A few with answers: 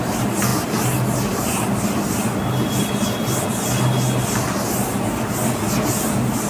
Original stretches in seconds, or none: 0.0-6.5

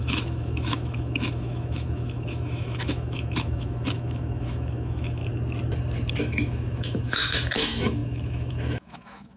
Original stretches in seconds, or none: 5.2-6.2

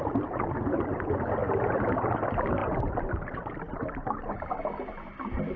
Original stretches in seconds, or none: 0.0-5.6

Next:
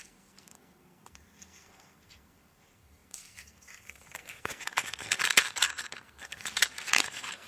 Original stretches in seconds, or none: none